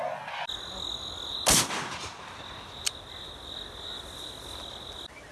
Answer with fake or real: real